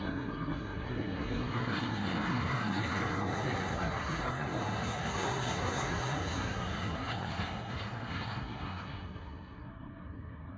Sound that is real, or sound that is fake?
fake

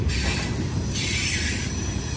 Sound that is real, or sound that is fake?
real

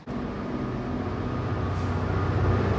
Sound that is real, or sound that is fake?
real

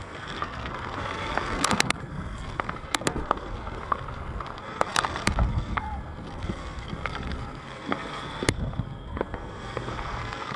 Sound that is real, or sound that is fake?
fake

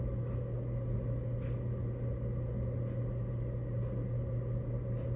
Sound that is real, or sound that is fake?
real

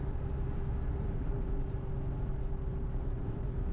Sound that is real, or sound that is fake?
real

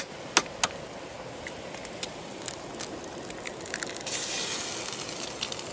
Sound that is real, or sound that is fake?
real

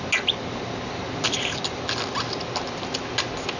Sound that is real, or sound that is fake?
real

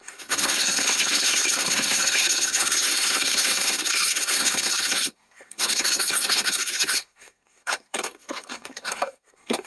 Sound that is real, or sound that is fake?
fake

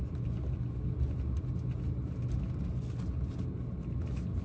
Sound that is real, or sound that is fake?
real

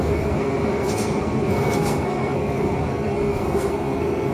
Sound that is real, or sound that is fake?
fake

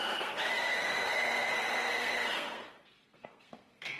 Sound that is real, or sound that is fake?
fake